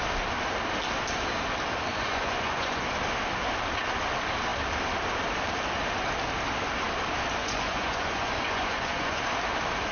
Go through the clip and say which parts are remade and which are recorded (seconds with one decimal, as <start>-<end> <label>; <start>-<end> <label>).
0.0-1.9 recorded; 1.9-2.8 remade; 2.8-7.4 recorded; 7.4-9.2 remade; 9.2-9.9 recorded